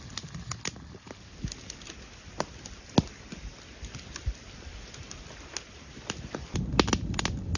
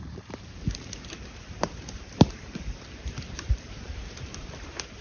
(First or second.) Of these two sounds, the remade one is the second